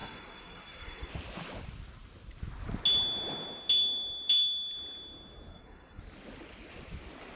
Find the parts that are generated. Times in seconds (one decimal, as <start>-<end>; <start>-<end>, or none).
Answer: 0.0-1.1; 5.5-6.0